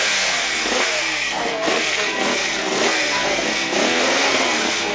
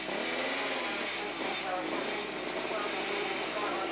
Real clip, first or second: second